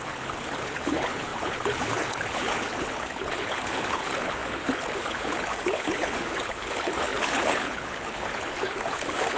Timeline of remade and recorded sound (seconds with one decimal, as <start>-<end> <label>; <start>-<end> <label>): 0.0-9.4 remade